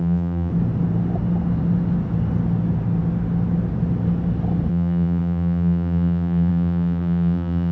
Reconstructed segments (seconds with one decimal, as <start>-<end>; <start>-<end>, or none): 0.0-0.5; 4.7-7.7